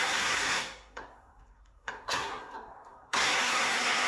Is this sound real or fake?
fake